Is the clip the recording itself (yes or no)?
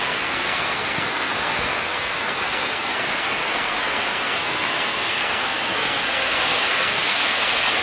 no